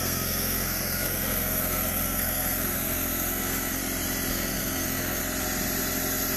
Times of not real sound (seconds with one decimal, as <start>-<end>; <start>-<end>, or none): 0.0-3.8; 4.3-5.2